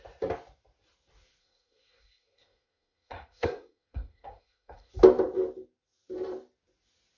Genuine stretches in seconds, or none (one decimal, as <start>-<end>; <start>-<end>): 0.0-1.4; 4.9-7.2